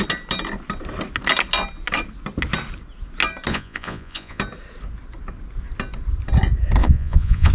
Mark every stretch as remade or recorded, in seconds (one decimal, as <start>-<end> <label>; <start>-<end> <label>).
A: 0.0-3.5 recorded; 3.5-4.4 remade; 4.4-6.8 recorded; 6.8-7.5 remade